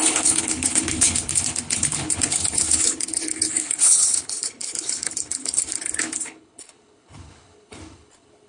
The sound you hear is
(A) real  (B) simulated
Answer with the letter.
B